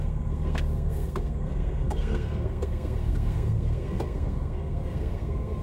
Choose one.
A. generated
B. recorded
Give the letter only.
A